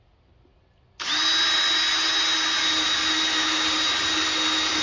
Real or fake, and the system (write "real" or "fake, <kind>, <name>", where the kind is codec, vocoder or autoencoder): real